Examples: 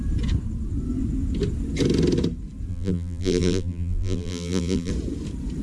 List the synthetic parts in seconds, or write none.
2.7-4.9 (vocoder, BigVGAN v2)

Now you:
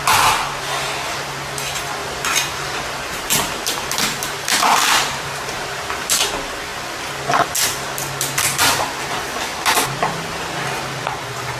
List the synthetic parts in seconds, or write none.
2.0-6.3 (vocoder, BigVGAN v2)